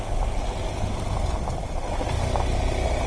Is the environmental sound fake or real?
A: real